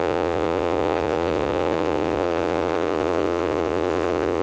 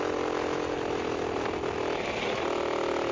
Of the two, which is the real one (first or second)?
second